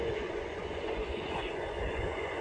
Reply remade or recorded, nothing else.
remade